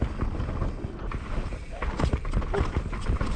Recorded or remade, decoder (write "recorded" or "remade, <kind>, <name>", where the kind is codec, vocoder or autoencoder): recorded